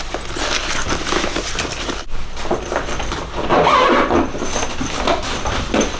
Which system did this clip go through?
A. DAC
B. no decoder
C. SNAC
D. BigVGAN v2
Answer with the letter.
B